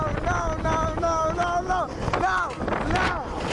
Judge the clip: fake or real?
real